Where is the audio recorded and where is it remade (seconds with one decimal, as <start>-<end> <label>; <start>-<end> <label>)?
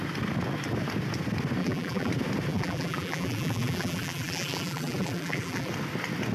0.0-1.6 recorded; 1.6-2.1 remade; 2.1-2.5 recorded; 2.5-5.7 remade; 5.7-6.3 recorded